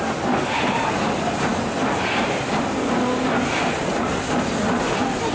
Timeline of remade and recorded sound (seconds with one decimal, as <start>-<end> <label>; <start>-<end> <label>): 0.0-5.3 recorded